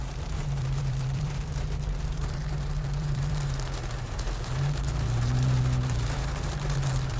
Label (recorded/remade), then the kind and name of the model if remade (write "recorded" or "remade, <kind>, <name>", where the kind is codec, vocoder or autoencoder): remade, vocoder, BigVGAN v2